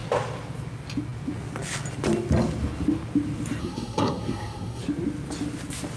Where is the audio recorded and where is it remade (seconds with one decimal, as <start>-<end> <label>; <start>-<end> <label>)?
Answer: 0.0-3.6 recorded; 3.6-4.8 remade; 4.8-6.0 recorded